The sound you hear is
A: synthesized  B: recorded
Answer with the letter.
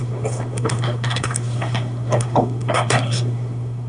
A